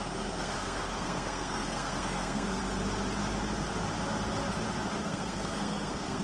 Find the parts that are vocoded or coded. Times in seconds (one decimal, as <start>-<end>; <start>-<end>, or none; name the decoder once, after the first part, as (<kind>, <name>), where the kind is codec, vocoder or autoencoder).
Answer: 0.0-2.6 (codec, SNAC); 5.0-6.2